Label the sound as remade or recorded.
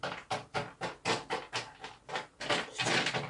recorded